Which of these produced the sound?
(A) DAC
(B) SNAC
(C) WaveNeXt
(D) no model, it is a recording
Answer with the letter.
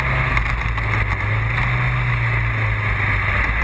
D